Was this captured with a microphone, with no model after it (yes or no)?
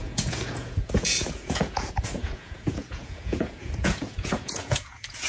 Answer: no